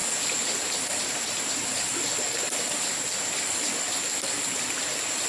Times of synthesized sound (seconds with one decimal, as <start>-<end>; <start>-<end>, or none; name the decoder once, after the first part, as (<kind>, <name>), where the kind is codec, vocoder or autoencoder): none